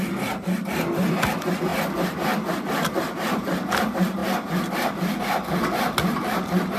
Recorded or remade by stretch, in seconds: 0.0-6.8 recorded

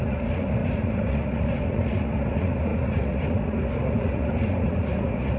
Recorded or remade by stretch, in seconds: 0.0-5.4 remade

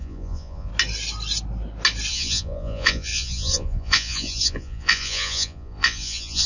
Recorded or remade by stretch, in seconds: 0.0-0.7 remade; 0.7-2.1 recorded; 2.1-6.5 remade

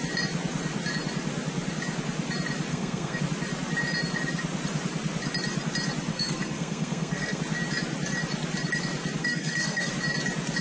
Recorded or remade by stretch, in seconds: 0.0-2.7 recorded; 2.7-3.2 remade; 3.2-6.1 recorded; 6.1-7.4 remade; 7.4-9.2 recorded; 9.2-9.9 remade; 9.9-10.6 recorded

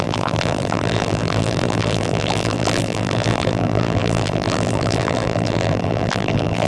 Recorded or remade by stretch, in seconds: 0.0-6.7 remade

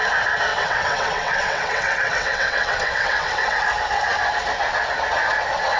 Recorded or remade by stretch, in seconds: 0.0-0.5 recorded; 0.5-3.6 remade; 3.6-5.8 recorded

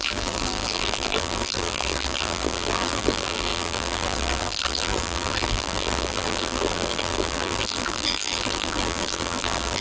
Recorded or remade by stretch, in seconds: 0.0-9.8 remade